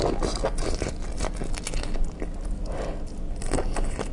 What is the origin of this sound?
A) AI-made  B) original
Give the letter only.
B